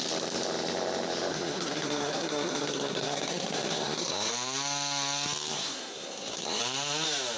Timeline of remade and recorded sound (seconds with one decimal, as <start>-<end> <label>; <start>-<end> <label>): 0.0-1.3 recorded; 1.3-4.3 remade; 4.3-5.5 recorded; 5.5-6.6 remade; 6.6-7.4 recorded